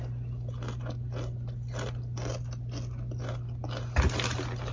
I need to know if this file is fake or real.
real